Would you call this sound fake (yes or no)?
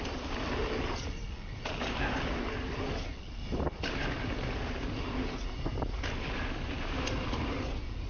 no